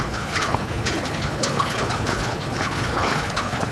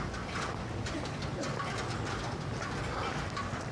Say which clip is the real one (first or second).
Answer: second